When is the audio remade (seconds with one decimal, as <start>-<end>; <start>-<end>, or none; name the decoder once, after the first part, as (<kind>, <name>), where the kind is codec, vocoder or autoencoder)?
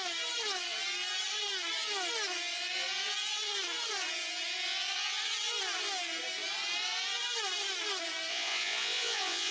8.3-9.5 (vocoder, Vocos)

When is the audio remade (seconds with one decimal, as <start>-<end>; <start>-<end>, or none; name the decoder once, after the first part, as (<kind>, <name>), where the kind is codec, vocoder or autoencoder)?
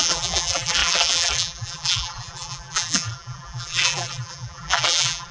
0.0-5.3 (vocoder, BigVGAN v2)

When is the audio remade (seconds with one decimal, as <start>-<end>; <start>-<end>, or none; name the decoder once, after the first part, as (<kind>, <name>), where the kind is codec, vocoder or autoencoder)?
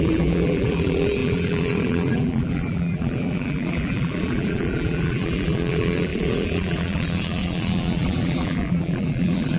0.0-9.6 (vocoder, BigVGAN v2)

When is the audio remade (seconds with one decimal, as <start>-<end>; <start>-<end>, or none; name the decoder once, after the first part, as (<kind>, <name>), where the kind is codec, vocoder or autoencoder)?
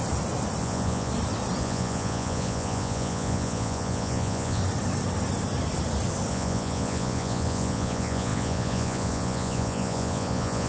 0.6-1.1 (vocoder, Vocos); 1.6-4.6; 6.3-10.7